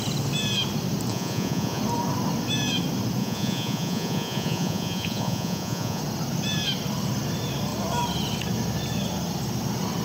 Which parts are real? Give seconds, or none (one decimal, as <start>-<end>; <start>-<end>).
0.0-1.1; 1.8-3.2; 6.0-10.0